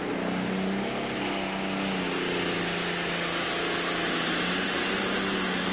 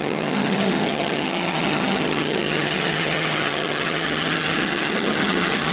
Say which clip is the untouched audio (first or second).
first